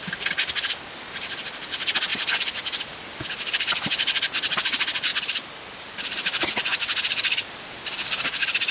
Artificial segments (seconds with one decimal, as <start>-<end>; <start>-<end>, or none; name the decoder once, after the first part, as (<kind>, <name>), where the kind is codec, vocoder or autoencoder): none

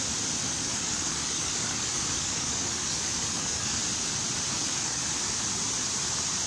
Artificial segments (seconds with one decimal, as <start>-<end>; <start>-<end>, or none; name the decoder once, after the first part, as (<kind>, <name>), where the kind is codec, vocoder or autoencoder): 0.4-3.8 (codec, DAC); 4.5-5.0

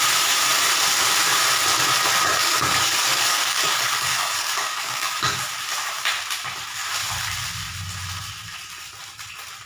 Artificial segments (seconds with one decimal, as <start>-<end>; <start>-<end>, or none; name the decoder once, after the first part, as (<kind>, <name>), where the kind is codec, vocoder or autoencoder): 2.3-5.4 (codec, DAC)

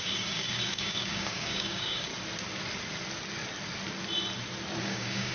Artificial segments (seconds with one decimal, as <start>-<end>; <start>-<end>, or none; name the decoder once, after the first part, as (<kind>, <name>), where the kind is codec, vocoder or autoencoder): 0.0-2.1 (codec, DAC); 4.8-5.3

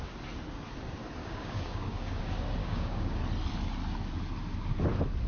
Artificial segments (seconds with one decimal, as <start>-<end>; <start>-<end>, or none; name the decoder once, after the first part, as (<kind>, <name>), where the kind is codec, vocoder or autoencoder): 1.2-2.2 (codec, DAC); 2.6-3.2

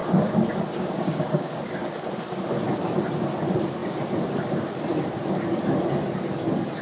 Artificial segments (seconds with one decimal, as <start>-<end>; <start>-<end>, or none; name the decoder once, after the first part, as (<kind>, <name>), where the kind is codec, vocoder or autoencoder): 0.0-1.6 (codec, DAC)

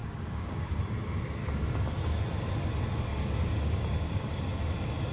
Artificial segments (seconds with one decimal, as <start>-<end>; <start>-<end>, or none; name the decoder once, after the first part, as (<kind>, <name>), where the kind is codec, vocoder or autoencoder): 0.0-0.8 (codec, DAC); 1.4-2.0; 3.1-4.4

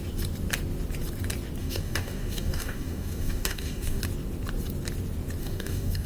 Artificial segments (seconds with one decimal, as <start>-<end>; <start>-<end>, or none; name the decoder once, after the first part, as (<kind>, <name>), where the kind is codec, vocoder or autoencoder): 1.6-4.0 (codec, DAC); 5.4-6.1